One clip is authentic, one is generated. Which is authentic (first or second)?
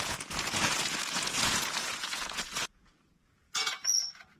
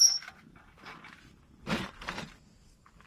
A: second